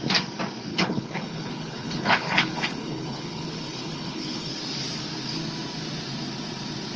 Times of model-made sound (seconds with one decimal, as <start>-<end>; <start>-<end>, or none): 0.7-4.5